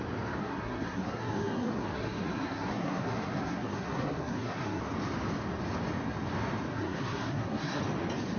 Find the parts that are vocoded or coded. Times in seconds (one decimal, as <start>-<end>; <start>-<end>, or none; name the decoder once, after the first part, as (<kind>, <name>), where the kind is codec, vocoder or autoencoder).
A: 0.4-4.8 (codec, SNAC); 6.7-7.8